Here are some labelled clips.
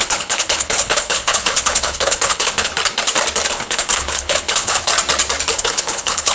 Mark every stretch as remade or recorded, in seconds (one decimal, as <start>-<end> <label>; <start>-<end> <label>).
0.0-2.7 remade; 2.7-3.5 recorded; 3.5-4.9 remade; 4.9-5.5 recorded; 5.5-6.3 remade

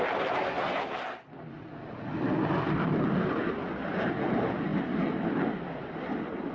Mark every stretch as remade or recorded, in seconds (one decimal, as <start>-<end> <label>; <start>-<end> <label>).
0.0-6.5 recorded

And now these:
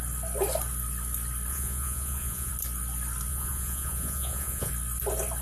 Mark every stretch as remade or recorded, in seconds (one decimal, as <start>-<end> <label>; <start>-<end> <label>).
0.0-1.5 recorded; 1.5-2.5 remade; 2.5-3.3 recorded; 3.3-4.7 remade; 4.7-5.4 recorded

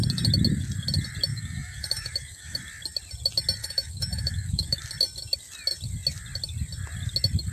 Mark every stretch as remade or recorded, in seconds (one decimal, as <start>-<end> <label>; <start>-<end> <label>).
0.0-1.3 recorded; 1.3-2.6 remade; 2.6-3.6 recorded; 3.6-4.8 remade; 4.8-7.5 recorded

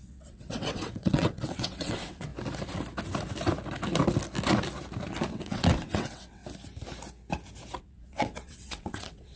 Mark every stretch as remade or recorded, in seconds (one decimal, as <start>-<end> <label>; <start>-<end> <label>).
0.0-2.3 remade; 2.3-5.3 recorded; 5.3-6.4 remade; 6.4-7.8 recorded; 7.8-9.4 remade